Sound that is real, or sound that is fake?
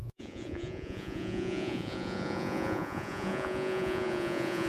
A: fake